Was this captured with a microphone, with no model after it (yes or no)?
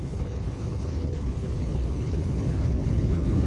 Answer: no